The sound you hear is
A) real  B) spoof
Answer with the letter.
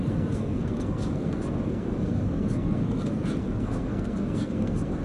B